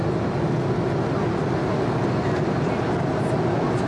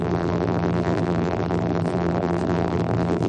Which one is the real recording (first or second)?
first